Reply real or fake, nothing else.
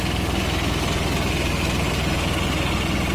real